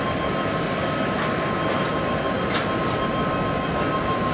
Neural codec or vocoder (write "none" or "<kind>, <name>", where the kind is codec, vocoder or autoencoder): none